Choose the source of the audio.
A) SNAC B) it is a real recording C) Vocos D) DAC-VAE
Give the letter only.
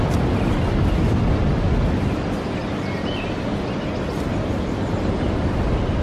B